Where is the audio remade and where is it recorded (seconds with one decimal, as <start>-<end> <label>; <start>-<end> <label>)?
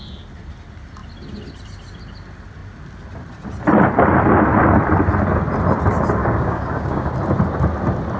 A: 0.0-6.2 recorded; 6.2-7.1 remade; 7.1-8.2 recorded